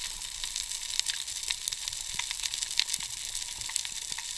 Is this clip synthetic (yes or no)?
no